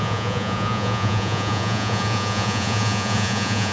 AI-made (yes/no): yes